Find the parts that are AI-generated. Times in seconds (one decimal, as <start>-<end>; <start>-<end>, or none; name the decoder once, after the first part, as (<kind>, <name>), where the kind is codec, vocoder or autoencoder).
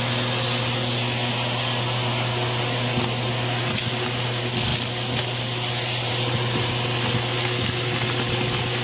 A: none